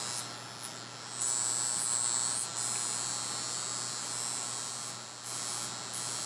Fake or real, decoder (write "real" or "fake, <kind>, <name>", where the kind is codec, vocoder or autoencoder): real